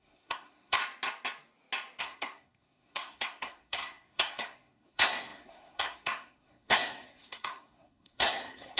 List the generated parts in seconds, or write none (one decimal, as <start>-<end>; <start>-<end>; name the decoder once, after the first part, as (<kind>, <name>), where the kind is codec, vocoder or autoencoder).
0.0-0.8 (codec, SNAC); 2.0-8.8